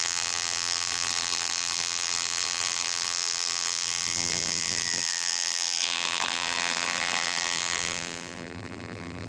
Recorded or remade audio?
remade